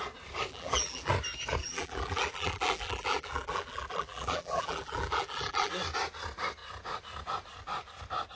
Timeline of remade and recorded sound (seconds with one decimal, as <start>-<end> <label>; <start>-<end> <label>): 0.0-0.5 recorded; 0.5-1.1 remade; 1.1-1.6 recorded; 1.6-5.7 remade; 5.7-8.4 recorded